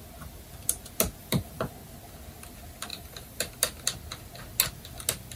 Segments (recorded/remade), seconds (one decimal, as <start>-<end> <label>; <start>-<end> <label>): 0.0-1.2 recorded; 1.2-1.7 remade; 1.7-2.9 recorded; 2.9-3.5 remade; 3.5-5.4 recorded